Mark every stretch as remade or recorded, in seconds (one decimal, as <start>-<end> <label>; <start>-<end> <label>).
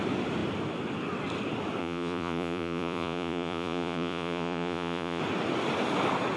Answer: 0.0-1.8 recorded; 1.8-5.2 remade; 5.2-6.4 recorded